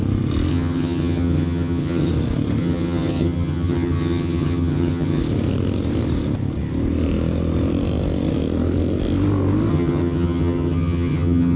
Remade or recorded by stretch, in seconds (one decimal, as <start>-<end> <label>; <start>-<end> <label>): 0.0-0.5 recorded; 0.5-2.1 remade; 2.1-2.6 recorded; 2.6-5.2 remade; 5.2-9.7 recorded; 9.7-11.6 remade